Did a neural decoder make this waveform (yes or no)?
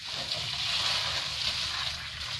no